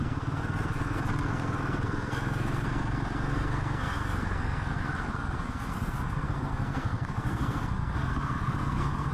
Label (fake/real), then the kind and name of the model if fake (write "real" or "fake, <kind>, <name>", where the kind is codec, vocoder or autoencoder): fake, codec, SNAC